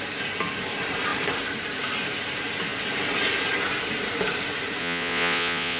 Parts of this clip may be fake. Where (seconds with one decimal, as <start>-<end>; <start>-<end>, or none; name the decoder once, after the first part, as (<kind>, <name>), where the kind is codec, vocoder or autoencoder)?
4.8-5.8 (vocoder, Vocos)